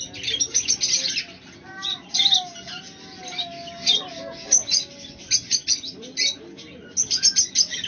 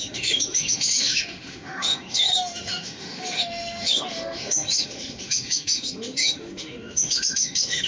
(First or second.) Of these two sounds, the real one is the first